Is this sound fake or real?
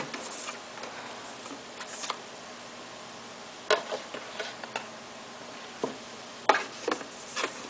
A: real